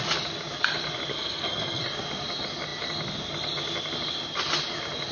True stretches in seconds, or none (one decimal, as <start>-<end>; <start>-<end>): 0.0-1.1; 1.8-5.1